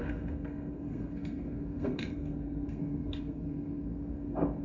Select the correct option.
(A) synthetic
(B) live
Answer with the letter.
A